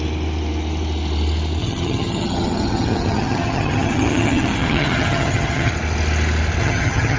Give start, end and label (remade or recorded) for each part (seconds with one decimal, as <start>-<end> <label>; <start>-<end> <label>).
0.0-1.6 recorded; 1.6-5.7 remade; 5.7-6.6 recorded; 6.6-7.2 remade